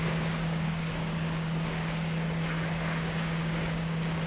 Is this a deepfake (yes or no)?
yes